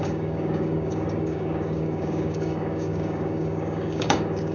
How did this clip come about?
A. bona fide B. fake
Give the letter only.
B